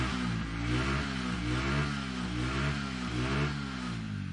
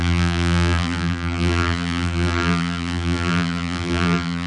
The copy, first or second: second